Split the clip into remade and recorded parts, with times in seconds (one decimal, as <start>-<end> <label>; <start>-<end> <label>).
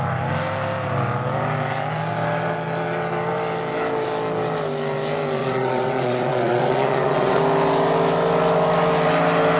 0.0-5.4 recorded; 5.4-7.4 remade; 7.4-9.6 recorded